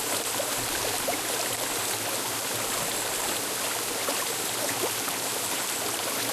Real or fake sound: real